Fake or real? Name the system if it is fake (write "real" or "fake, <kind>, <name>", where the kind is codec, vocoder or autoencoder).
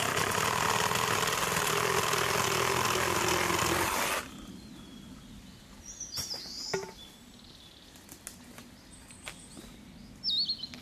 real